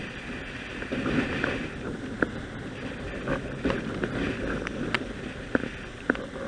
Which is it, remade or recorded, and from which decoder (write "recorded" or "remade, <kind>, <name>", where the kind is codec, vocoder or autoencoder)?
recorded